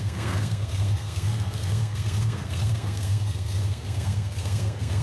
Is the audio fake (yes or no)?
yes